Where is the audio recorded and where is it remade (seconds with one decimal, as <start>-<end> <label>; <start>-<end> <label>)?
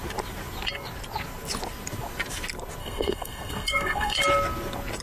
0.0-2.8 recorded; 2.8-4.2 remade; 4.2-5.0 recorded